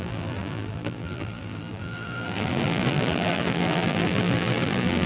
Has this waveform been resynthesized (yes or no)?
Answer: yes